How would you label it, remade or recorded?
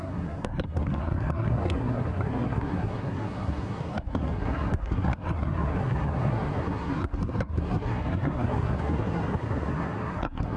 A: remade